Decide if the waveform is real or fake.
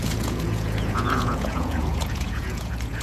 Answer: fake